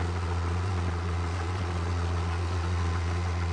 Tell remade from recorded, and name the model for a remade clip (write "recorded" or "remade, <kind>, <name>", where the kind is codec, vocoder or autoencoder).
remade, vocoder, Vocos